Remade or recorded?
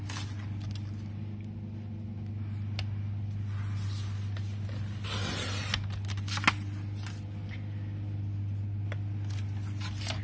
recorded